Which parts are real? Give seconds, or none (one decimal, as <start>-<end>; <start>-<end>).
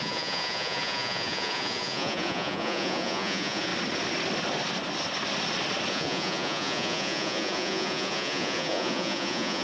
3.7-5.9